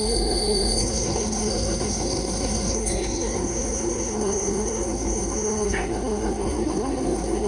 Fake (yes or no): yes